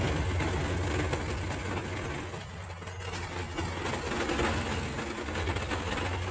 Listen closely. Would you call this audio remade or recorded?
recorded